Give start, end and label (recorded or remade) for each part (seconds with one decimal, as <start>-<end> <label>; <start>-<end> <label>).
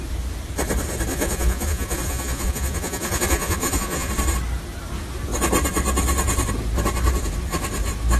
0.0-1.1 recorded; 1.1-4.1 remade; 4.1-8.2 recorded